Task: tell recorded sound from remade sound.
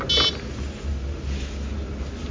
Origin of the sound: recorded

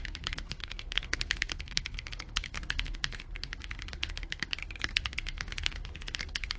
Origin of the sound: remade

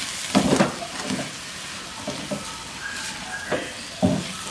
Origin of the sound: recorded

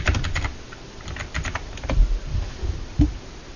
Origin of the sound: recorded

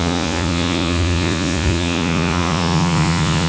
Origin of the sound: remade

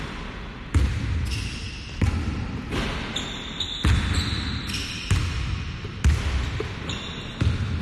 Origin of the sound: recorded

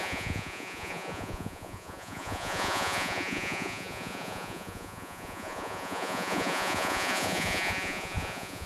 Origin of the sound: remade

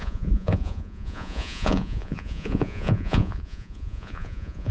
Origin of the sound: remade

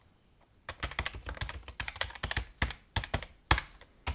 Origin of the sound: recorded